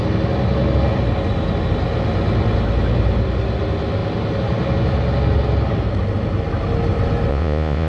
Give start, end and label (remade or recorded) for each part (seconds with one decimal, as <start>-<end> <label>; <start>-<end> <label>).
0.0-7.3 recorded; 7.3-7.9 remade